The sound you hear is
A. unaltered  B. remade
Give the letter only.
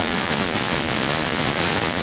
B